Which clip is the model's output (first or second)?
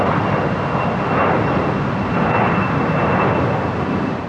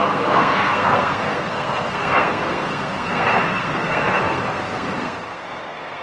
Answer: second